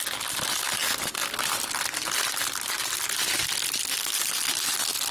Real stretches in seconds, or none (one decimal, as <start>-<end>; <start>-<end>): 0.0-5.1